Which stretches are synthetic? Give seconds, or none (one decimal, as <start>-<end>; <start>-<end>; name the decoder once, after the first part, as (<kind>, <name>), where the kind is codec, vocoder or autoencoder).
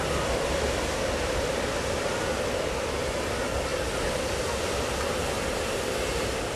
none